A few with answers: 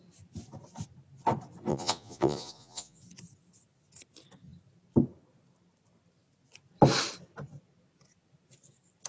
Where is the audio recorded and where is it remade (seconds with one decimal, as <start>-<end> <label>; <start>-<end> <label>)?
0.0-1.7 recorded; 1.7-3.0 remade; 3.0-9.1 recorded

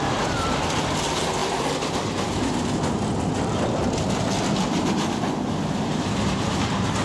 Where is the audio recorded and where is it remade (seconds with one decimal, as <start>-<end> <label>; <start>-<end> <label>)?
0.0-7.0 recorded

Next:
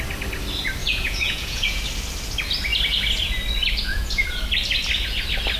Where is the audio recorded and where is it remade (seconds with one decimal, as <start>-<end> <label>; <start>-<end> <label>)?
0.0-0.8 recorded; 0.8-1.8 remade; 1.8-3.9 recorded; 3.9-4.4 remade; 4.4-5.6 recorded

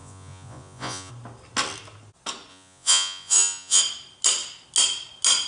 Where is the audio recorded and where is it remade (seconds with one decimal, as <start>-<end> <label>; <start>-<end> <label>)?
0.0-1.1 remade; 1.1-2.5 recorded; 2.5-3.8 remade; 3.8-5.5 recorded

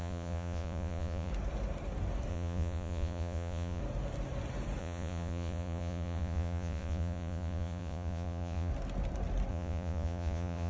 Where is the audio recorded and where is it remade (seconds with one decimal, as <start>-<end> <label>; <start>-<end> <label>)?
0.0-1.3 remade; 1.3-2.3 recorded; 2.3-3.8 remade; 3.8-4.8 recorded; 4.8-8.7 remade; 8.7-9.5 recorded; 9.5-10.7 remade

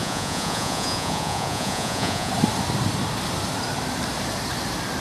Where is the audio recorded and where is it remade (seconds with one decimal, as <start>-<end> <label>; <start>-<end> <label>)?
0.0-2.3 remade; 2.3-5.0 recorded